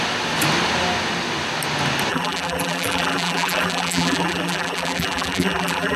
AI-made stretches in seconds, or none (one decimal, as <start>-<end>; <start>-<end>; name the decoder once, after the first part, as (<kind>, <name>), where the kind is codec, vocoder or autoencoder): 2.1-6.0 (vocoder, BigVGAN v2)